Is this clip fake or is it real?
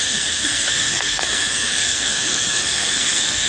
fake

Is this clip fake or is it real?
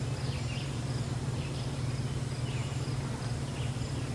real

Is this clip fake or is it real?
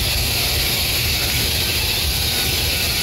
real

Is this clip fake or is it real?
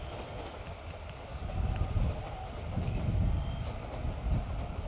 real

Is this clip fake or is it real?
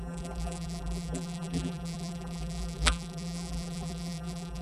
fake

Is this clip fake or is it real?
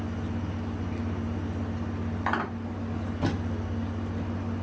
real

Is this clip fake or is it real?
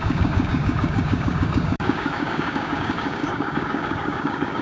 fake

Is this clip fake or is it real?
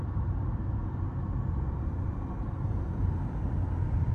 real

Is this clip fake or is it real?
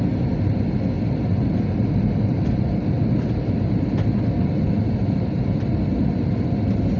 real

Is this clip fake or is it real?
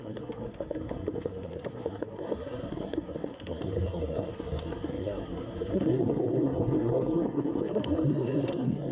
fake